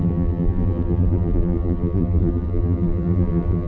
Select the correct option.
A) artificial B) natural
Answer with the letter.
A